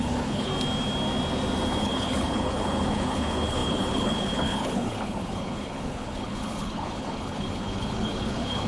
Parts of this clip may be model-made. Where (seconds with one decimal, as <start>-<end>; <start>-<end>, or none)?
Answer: 0.0-0.5; 1.8-8.7